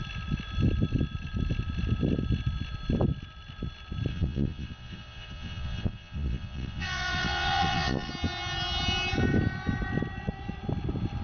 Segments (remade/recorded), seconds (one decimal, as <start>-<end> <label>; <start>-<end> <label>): 0.0-4.1 recorded; 4.1-8.1 remade; 8.1-11.2 recorded